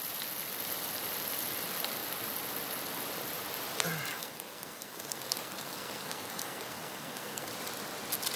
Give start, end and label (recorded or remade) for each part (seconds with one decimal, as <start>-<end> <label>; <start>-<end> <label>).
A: 0.0-4.1 recorded; 4.1-7.5 remade; 7.5-8.4 recorded